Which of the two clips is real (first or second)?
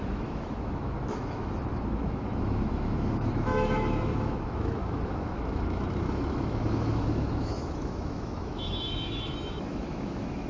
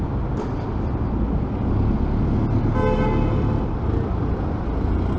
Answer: second